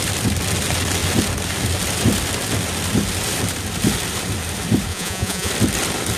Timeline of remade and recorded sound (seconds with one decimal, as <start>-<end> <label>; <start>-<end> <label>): 0.0-4.9 recorded; 4.9-5.5 remade; 5.5-6.2 recorded